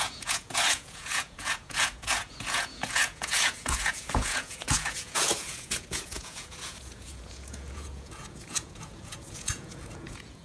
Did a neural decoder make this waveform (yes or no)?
yes